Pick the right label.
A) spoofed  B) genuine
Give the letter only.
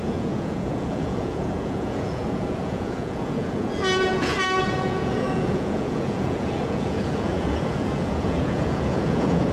A